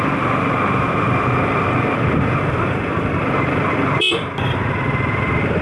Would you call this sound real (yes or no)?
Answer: yes